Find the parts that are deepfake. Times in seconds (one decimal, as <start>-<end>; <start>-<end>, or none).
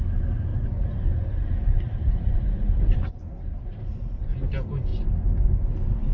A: 0.5-4.2